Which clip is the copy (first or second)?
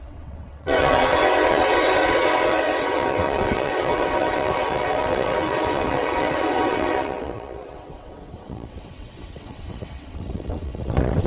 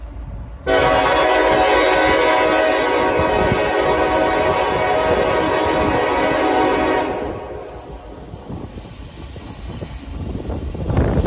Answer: first